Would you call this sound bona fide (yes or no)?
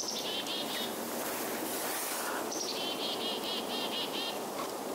no